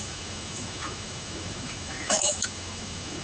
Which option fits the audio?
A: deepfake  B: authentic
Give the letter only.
A